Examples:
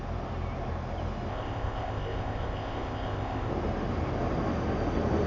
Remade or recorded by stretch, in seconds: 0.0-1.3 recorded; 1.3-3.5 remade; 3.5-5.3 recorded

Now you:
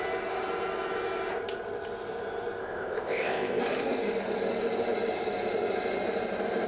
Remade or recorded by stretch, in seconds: 0.0-2.6 recorded; 2.6-3.6 remade; 3.6-6.7 recorded